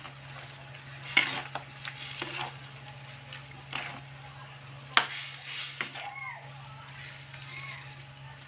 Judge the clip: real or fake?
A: real